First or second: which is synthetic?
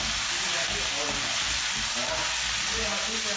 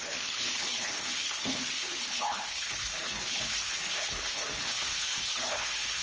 second